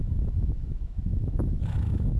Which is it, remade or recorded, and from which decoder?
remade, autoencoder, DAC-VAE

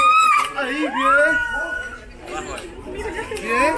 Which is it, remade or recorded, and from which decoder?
recorded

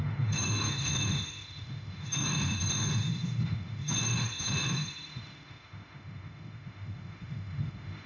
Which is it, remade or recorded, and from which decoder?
remade, autoencoder, DAC-VAE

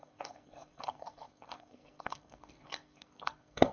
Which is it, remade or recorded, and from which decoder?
remade, codec, SNAC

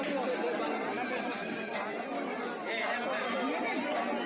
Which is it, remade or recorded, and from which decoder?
recorded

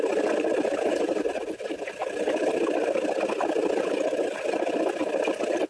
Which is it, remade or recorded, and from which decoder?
recorded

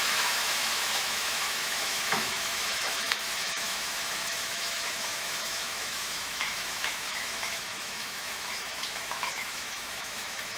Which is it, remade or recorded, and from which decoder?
remade, autoencoder, DAC-VAE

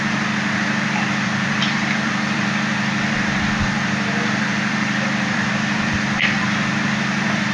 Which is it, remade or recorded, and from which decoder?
remade, vocoder, BigVGAN v2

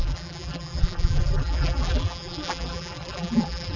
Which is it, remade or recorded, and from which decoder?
remade, vocoder, BigVGAN v2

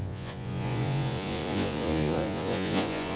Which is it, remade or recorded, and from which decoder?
remade, vocoder, Vocos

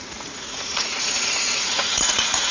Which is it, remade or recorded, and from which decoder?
remade, vocoder, Vocos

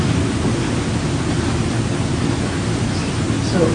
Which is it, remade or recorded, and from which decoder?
recorded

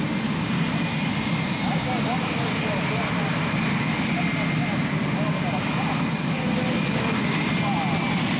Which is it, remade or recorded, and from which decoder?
recorded